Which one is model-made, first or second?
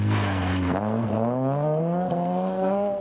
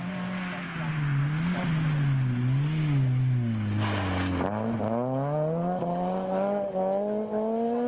first